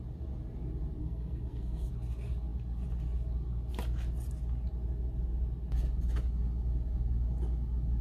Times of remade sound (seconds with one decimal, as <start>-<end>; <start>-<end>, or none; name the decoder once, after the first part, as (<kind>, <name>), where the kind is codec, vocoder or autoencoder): 1.0-1.9 (codec, SNAC)